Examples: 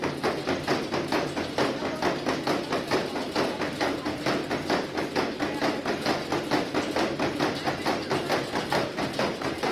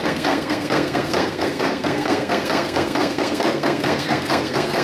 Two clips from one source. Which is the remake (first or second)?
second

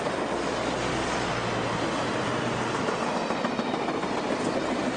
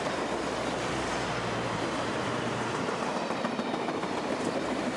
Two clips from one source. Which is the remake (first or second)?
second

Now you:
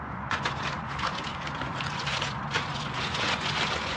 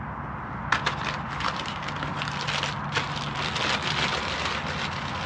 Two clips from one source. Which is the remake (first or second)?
first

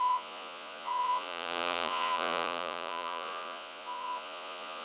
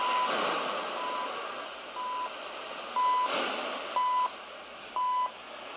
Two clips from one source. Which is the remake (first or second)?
first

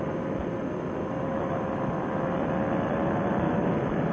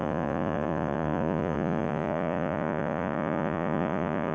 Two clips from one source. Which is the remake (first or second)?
second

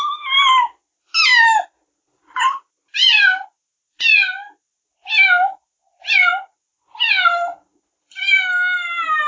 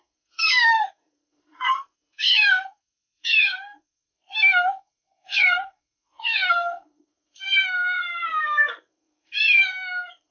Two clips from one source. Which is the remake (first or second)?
second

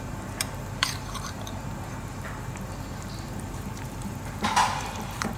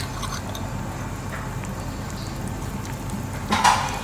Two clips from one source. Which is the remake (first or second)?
first